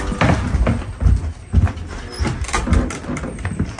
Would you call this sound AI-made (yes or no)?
no